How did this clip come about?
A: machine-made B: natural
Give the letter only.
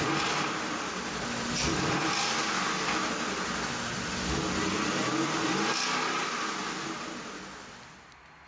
B